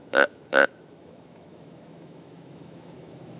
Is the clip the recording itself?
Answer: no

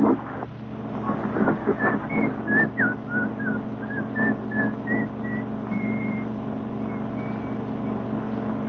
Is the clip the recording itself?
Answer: yes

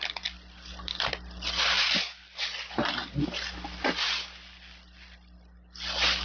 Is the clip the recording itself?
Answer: yes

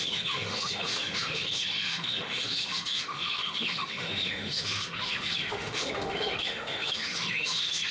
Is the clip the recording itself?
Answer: no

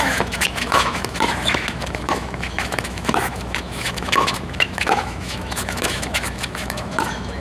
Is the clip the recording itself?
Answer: no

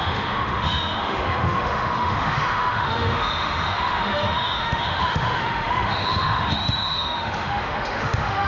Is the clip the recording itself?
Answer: no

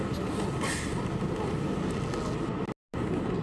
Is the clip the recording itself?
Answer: yes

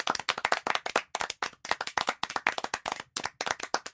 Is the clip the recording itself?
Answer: yes